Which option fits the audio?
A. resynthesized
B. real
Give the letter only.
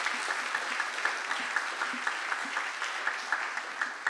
B